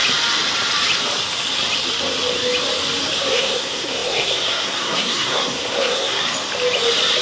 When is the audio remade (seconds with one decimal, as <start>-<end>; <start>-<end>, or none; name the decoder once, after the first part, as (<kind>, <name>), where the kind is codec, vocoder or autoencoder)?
3.2-6.2 (codec, SNAC)